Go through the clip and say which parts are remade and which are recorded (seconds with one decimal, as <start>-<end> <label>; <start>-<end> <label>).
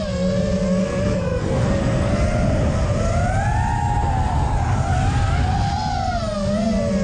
0.0-0.8 recorded; 0.8-1.8 remade; 1.8-7.0 recorded